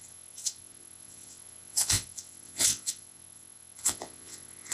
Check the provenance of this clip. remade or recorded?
remade